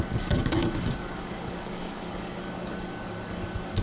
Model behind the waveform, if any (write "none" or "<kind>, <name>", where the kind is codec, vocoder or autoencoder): codec, DAC